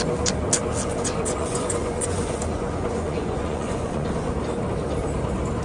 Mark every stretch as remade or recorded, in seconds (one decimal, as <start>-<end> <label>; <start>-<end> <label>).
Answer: 0.0-0.9 recorded; 0.9-4.3 remade; 4.3-5.6 recorded